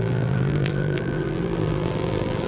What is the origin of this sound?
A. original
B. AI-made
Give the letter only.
B